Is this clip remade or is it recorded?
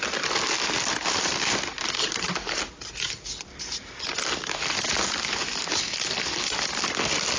recorded